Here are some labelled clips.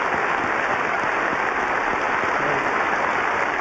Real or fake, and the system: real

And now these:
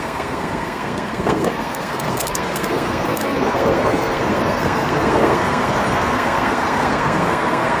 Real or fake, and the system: fake, codec, SNAC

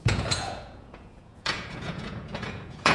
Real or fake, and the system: fake, vocoder, Vocos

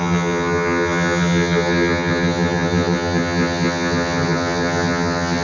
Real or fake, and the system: fake, vocoder, HiFi-GAN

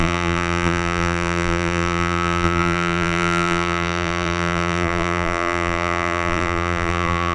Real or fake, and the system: fake, vocoder, BigVGAN v2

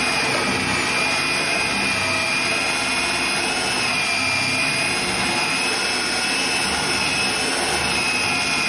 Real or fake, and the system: real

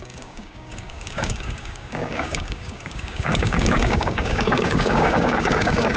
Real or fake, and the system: fake, codec, DAC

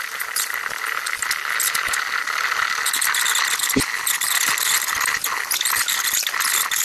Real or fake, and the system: real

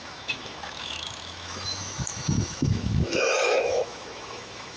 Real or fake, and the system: fake, autoencoder, DAC-VAE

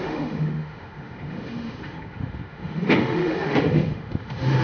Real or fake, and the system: fake, autoencoder, DAC-VAE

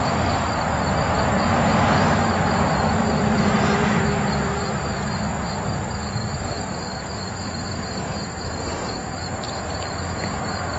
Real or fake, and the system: fake, vocoder, BigVGAN v2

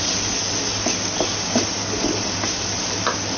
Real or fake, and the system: real